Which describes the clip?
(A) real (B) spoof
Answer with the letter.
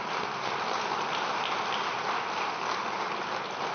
A